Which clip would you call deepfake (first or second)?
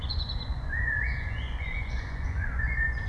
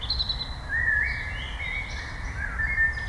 first